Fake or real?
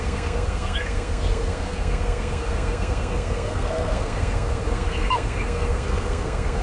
fake